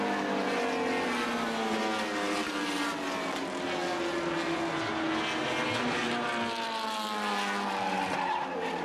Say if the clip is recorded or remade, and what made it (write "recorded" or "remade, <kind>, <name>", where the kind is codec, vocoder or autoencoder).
recorded